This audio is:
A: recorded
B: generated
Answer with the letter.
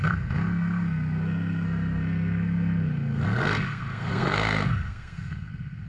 B